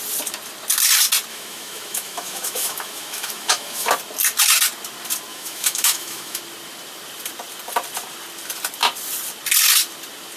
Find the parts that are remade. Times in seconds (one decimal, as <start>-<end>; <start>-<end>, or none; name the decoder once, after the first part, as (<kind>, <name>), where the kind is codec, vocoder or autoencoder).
1.3-3.9 (autoencoder, DAC-VAE); 5.3-6.4

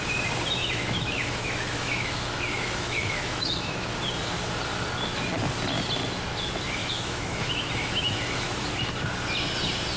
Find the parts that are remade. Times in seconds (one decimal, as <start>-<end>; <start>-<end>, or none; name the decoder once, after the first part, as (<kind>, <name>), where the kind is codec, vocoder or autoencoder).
0.6-3.9 (autoencoder, DAC-VAE); 6.8-8.7

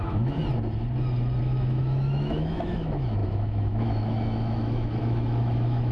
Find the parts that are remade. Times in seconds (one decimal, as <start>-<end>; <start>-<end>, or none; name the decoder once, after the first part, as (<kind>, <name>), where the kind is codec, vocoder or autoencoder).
0.0-0.4 (autoencoder, DAC-VAE); 1.4-5.9

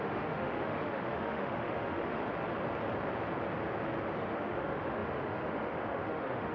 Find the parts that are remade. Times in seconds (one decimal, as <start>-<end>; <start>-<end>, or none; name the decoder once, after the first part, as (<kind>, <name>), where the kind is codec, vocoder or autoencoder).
0.0-2.2 (autoencoder, DAC-VAE); 4.2-6.5